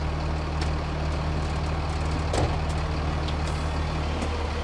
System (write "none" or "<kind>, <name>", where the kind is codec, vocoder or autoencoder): none